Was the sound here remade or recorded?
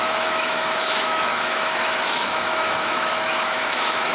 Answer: remade